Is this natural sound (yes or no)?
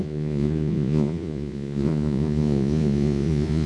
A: no